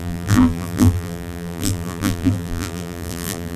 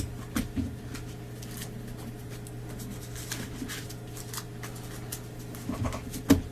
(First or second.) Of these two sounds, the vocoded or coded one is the first